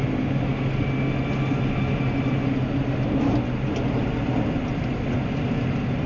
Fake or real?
real